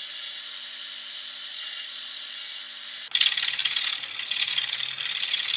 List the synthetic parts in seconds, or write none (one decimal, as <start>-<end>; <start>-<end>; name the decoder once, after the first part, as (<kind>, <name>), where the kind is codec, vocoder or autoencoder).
1.5-2.3 (vocoder, Vocos)